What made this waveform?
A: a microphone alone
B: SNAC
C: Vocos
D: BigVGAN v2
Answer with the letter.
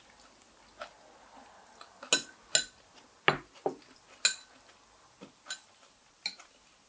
A